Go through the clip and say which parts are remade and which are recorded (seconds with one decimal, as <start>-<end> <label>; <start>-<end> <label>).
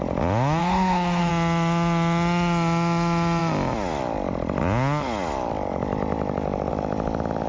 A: 0.0-0.6 recorded; 0.6-1.3 remade; 1.3-7.5 recorded